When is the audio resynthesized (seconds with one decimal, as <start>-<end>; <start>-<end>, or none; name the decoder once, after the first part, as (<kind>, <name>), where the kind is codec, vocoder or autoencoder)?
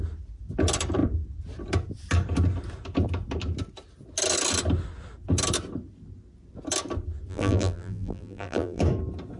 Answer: 7.3-8.8 (vocoder, BigVGAN v2)